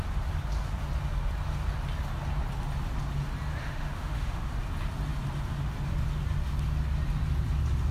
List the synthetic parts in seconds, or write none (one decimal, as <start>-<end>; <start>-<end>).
3.6-4.5